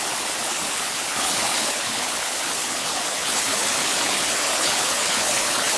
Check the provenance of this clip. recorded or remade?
remade